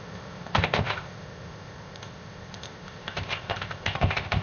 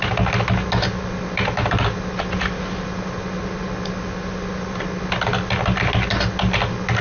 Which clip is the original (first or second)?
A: second